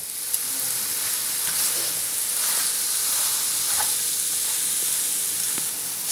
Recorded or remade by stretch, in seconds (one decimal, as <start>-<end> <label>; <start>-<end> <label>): 0.0-6.1 recorded